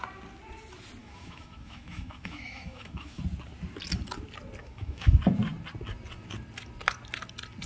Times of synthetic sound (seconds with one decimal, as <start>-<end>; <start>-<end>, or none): 1.0-3.2; 4.6-5.1